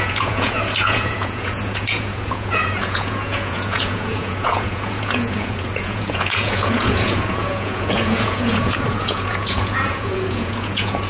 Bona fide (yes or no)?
no